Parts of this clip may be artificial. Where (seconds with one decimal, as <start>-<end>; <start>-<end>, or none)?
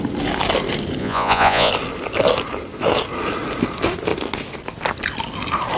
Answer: 1.0-1.7